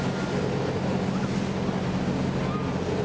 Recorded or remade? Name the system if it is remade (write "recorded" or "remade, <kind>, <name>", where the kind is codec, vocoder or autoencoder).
recorded